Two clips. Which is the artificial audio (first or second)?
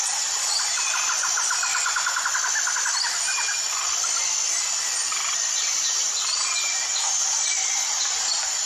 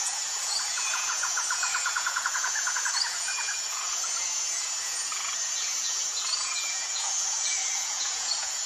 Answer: second